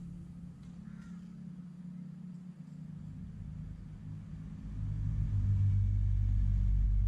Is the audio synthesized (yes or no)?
no